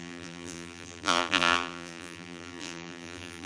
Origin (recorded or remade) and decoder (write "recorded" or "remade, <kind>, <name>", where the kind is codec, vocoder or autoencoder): remade, vocoder, BigVGAN v2